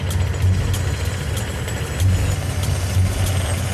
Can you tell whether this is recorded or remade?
recorded